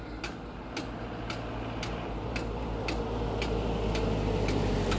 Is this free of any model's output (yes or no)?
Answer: yes